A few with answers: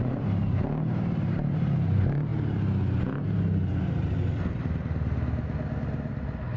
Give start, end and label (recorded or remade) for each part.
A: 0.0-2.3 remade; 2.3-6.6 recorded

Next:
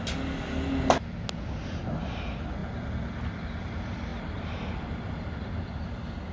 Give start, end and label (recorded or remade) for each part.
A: 0.0-6.3 recorded

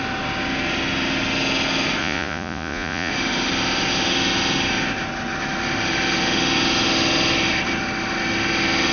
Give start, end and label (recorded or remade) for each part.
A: 0.0-2.0 recorded; 2.0-3.1 remade; 3.1-8.9 recorded